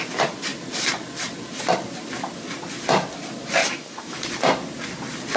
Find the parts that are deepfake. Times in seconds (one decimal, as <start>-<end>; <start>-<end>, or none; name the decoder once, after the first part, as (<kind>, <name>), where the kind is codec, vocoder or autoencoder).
3.6-4.2 (autoencoder, DAC-VAE)